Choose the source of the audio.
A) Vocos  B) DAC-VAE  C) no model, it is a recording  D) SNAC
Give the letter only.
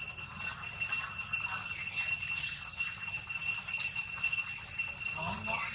C